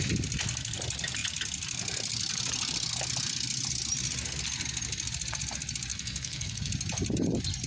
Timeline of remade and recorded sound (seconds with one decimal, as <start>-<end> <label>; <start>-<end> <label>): 0.0-5.9 recorded; 5.9-6.7 remade; 6.7-7.7 recorded